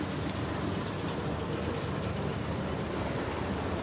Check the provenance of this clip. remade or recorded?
recorded